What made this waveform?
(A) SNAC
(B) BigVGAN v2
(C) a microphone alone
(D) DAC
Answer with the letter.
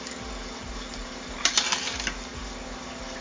C